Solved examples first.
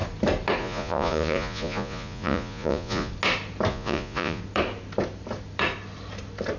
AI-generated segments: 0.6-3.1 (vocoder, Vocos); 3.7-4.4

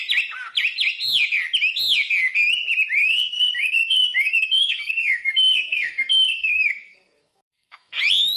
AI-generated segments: 3.0-8.0 (codec, SNAC)

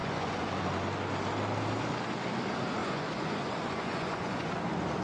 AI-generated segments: 0.0-0.6 (vocoder, Vocos); 2.8-4.5